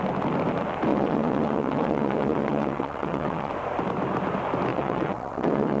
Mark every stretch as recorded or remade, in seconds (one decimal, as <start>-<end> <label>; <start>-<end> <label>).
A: 0.0-0.9 recorded; 0.9-3.5 remade; 3.5-4.7 recorded; 4.7-5.8 remade